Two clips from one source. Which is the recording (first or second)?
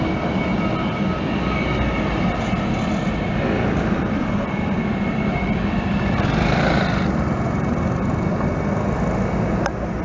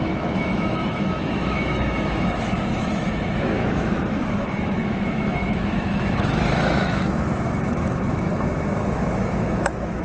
first